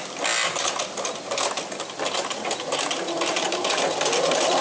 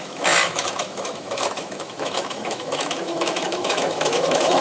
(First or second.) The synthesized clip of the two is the second